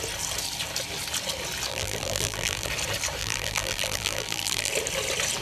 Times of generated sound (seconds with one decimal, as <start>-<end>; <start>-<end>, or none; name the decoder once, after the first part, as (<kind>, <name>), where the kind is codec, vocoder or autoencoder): 1.7-2.7 (vocoder, BigVGAN v2); 3.2-4.7